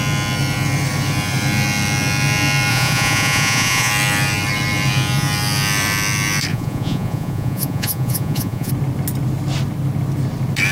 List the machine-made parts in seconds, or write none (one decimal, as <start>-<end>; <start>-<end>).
2.7-3.9; 6.5-8.7